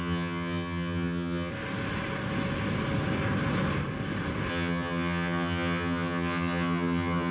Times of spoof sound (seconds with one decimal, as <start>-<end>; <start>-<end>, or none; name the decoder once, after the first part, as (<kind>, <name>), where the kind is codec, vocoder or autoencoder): 0.0-1.5 (vocoder, HiFi-GAN); 4.5-7.3